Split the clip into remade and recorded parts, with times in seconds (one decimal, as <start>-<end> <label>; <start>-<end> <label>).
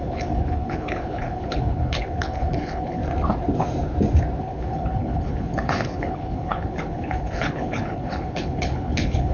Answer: 0.0-3.0 remade; 3.0-4.4 recorded; 4.4-9.3 remade